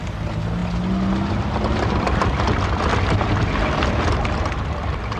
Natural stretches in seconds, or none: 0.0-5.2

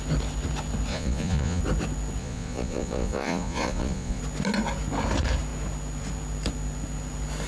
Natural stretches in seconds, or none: 0.0-0.9; 1.6-2.2; 4.2-7.5

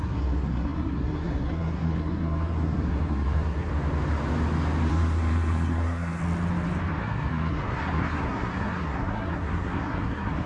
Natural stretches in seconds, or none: 3.7-4.9; 6.2-7.0

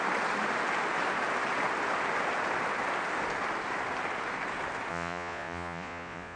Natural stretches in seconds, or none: 0.0-4.9

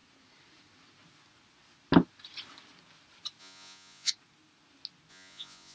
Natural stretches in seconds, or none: 0.0-3.4; 4.1-5.1

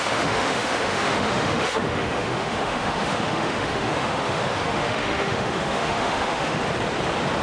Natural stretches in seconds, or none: 6.6-7.4

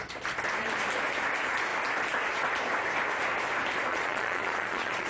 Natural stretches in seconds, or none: 0.0-3.9

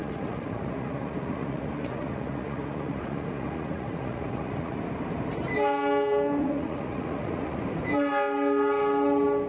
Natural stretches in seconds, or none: 4.8-6.4; 7.6-9.5